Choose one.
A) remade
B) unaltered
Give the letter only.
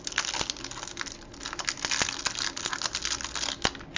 B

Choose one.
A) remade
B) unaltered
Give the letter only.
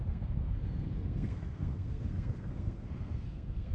A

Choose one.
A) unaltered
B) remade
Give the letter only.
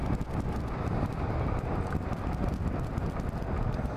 A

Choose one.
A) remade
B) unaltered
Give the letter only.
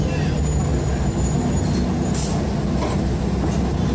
B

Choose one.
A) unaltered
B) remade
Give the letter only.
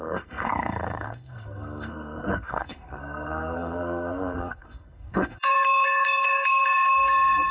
B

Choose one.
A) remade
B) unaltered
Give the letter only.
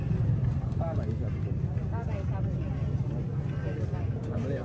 B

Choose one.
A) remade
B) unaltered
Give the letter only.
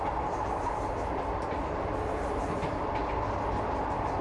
B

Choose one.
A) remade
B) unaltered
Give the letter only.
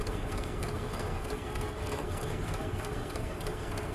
A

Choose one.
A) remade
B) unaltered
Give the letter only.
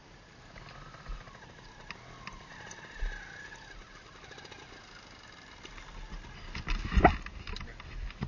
B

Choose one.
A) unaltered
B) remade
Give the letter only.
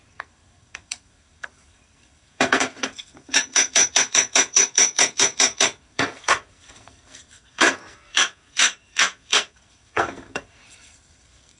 B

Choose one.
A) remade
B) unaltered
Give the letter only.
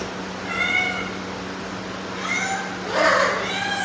B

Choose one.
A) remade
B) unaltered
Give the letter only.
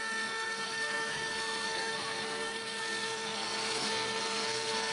A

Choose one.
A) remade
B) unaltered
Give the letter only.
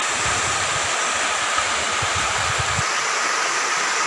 B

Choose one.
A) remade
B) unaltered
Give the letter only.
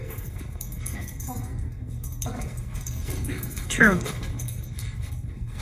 A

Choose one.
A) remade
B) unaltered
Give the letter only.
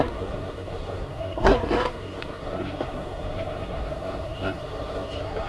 A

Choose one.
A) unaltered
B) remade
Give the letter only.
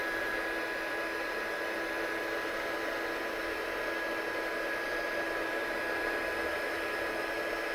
A